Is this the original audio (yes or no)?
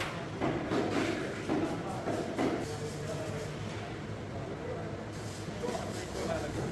yes